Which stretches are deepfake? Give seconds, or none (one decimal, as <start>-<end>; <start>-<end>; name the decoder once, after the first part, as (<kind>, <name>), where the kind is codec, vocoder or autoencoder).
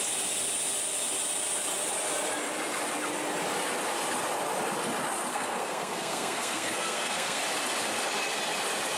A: 5.3-7.4 (codec, SNAC)